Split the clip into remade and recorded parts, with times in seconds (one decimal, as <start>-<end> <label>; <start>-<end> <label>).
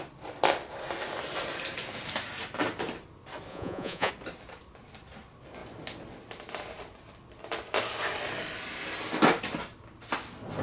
0.0-3.5 recorded; 3.5-4.1 remade; 4.1-10.6 recorded